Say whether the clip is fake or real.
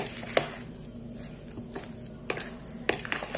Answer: real